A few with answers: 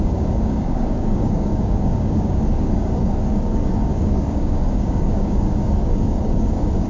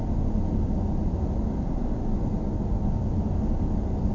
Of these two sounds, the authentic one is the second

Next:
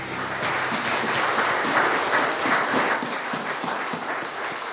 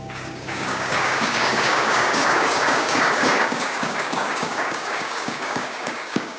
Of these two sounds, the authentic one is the first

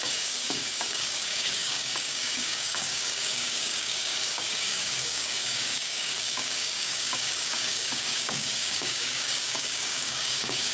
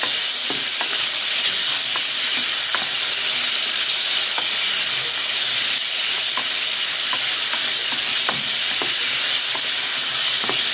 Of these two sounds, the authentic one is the second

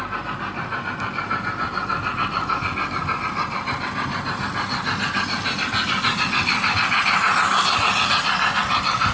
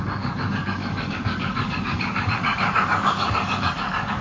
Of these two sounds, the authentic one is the first